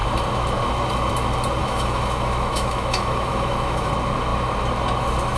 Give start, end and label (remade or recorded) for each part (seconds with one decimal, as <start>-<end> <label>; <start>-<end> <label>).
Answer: 0.0-1.6 recorded; 1.6-3.9 remade; 3.9-5.4 recorded

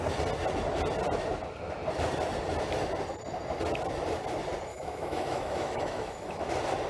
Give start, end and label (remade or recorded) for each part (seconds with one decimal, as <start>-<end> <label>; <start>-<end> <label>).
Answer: 0.0-4.7 recorded; 4.7-6.4 remade; 6.4-6.9 recorded

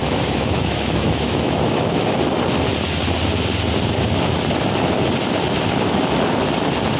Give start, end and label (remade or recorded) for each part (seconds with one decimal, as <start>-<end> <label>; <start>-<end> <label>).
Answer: 0.0-2.0 remade; 2.0-7.0 recorded

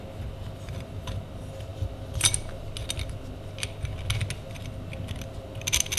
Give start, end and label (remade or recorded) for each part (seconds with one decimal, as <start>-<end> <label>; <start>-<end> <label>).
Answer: 0.0-6.0 recorded